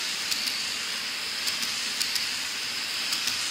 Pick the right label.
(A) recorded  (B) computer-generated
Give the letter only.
A